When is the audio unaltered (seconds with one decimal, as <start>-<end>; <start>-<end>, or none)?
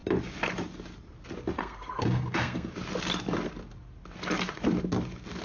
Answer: 0.0-1.6; 2.7-5.4